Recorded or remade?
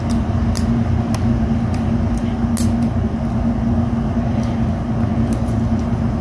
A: recorded